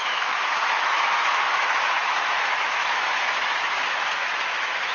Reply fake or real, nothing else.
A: fake